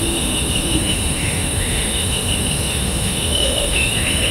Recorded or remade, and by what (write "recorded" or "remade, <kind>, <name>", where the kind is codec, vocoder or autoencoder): remade, autoencoder, DAC-VAE